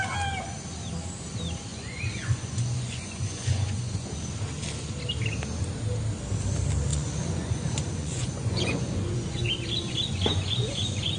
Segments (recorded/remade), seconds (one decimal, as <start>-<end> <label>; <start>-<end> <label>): 0.0-1.7 recorded; 1.7-4.1 remade; 4.1-6.9 recorded; 6.9-11.2 remade